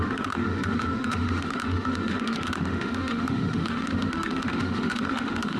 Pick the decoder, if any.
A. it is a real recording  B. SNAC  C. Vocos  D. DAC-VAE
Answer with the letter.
D